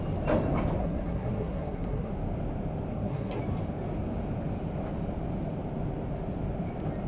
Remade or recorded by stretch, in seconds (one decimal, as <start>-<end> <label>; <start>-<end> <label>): 0.0-0.8 recorded; 0.8-2.1 remade; 2.1-2.9 recorded; 2.9-3.4 remade; 3.4-7.1 recorded